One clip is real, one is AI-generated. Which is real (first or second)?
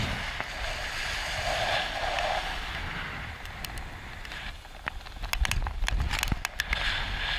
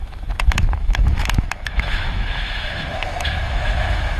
first